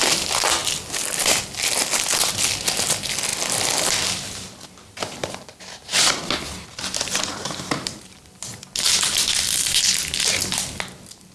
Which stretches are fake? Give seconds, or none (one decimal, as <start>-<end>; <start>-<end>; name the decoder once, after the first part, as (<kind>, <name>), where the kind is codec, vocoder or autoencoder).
none